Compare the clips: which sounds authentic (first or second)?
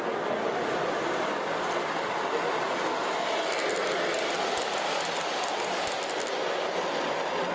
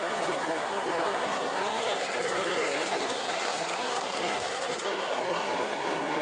first